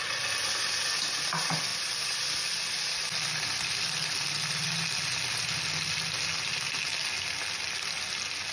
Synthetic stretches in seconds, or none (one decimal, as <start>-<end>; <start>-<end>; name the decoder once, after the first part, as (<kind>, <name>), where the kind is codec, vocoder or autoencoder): none